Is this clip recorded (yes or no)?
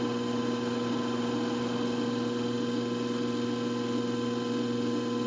yes